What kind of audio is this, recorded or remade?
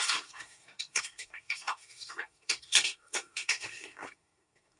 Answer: remade